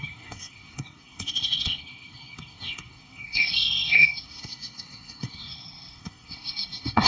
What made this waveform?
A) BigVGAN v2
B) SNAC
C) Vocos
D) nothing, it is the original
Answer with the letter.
B